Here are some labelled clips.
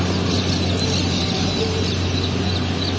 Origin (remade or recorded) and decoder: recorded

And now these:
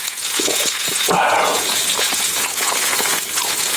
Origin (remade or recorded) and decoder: remade, vocoder, Vocos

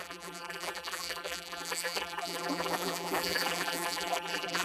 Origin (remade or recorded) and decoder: remade, vocoder, BigVGAN v2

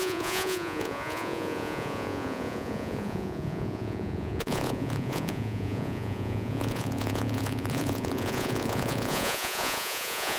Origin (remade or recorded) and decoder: remade, vocoder, Vocos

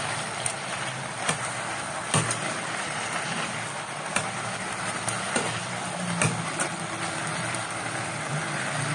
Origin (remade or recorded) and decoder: remade, vocoder, BigVGAN v2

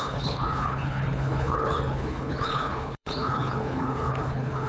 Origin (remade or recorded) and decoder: remade, codec, HILCodec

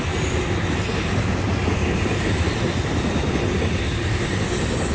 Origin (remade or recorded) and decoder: recorded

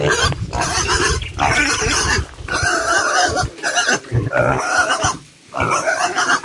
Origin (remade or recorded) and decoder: recorded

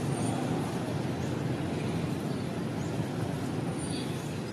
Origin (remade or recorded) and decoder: recorded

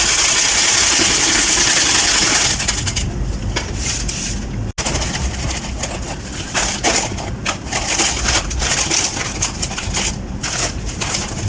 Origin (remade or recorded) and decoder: recorded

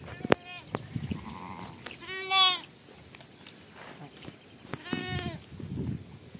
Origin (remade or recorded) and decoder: recorded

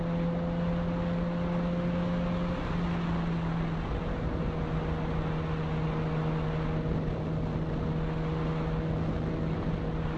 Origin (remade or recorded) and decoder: recorded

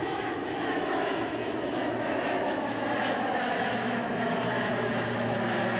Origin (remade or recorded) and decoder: remade, autoencoder, DAC-VAE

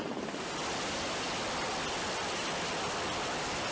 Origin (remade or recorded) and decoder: recorded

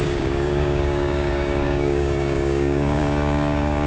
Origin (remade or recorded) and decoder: remade, codec, DAC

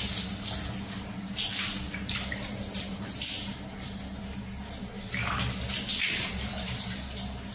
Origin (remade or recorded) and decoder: recorded